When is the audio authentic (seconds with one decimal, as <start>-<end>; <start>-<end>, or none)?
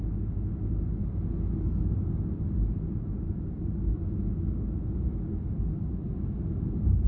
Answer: 0.0-7.1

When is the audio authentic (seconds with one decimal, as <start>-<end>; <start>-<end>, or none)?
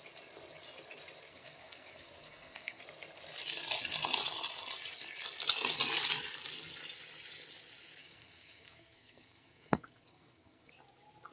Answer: 0.0-1.3; 2.8-8.0; 10.7-11.3